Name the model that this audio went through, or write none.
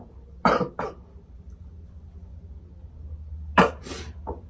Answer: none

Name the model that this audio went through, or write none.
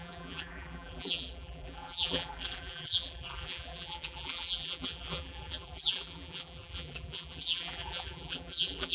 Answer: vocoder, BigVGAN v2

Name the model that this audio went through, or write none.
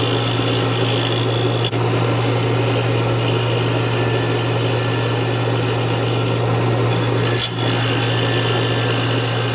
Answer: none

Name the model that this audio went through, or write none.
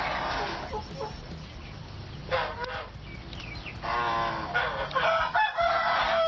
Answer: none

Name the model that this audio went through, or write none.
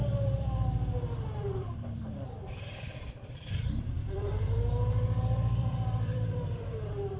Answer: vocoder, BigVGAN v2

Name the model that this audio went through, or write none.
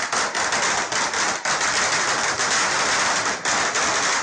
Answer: none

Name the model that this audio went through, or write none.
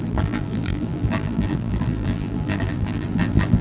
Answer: vocoder, BigVGAN v2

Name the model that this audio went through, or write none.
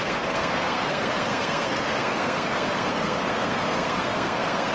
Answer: codec, SNAC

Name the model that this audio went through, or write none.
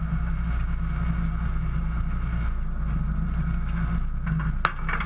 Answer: none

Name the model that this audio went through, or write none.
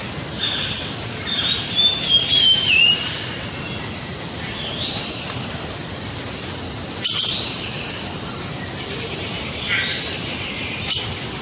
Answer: none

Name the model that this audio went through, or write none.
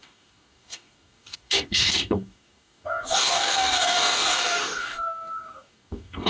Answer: codec, DAC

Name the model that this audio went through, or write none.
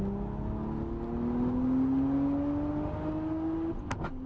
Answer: none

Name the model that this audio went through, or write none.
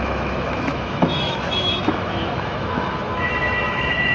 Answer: autoencoder, DAC-VAE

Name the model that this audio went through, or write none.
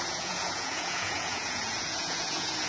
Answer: vocoder, Vocos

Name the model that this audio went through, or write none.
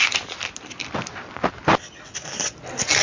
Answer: none